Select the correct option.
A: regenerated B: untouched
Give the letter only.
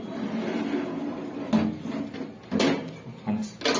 B